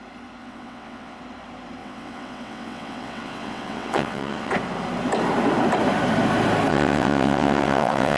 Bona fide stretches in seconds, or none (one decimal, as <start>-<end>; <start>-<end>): 0.0-0.4; 1.2-1.8; 4.5-6.7